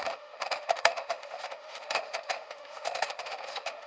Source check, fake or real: fake